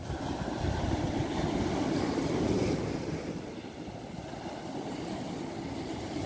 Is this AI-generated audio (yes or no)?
no